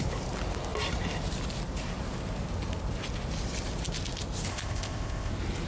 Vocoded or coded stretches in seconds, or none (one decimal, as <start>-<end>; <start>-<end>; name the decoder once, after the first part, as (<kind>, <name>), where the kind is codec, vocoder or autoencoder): 4.5-5.3 (codec, ZipCodec)